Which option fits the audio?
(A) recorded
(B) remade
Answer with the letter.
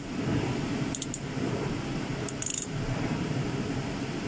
A